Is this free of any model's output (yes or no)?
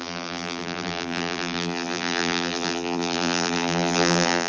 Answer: no